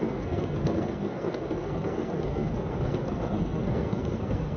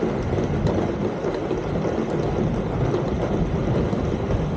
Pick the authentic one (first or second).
second